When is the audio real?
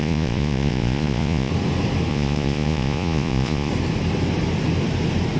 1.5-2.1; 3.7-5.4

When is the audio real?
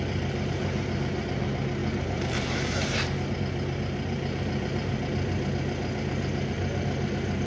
0.0-1.8; 3.4-7.5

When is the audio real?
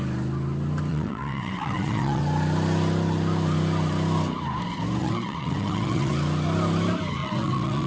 0.0-0.9; 2.2-5.0; 6.1-7.2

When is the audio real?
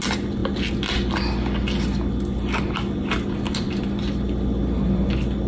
0.0-5.5